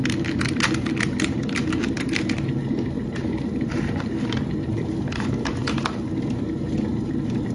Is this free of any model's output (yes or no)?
no